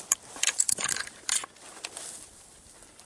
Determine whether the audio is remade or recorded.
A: recorded